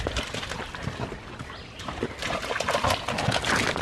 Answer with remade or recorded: recorded